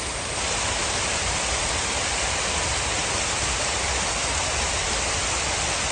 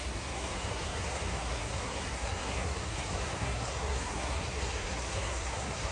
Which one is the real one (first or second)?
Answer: first